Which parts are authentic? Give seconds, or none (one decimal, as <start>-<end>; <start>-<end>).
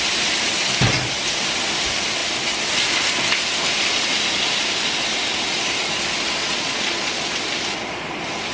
0.0-6.4; 7.3-8.5